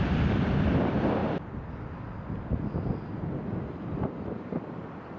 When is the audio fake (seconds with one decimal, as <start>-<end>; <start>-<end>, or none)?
0.0-1.2; 2.3-5.2